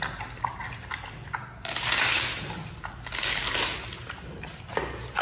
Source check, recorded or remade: recorded